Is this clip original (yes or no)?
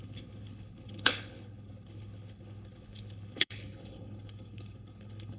no